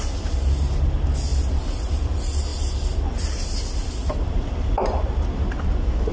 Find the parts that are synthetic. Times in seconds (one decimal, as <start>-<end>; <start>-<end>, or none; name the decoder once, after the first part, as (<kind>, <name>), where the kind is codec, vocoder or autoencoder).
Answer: none